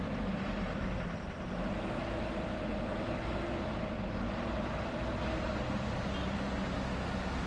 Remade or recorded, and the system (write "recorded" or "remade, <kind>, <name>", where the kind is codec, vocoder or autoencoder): recorded